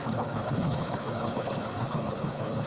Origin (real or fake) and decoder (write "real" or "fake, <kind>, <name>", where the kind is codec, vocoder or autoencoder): fake, codec, HILCodec